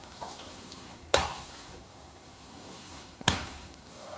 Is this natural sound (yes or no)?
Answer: no